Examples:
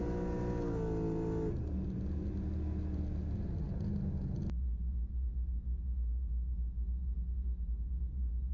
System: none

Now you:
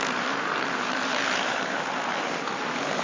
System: vocoder, BigVGAN v2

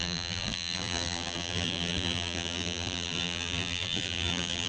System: vocoder, BigVGAN v2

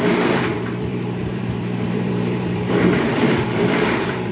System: vocoder, BigVGAN v2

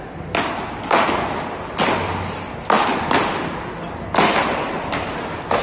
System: none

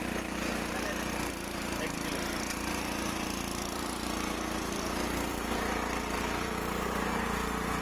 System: vocoder, BigVGAN v2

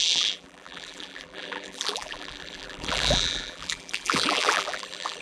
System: vocoder, BigVGAN v2